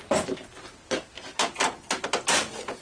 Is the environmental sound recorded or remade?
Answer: recorded